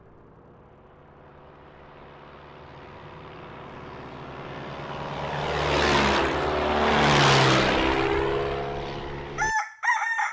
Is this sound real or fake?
real